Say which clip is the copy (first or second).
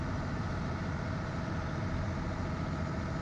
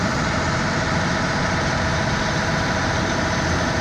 second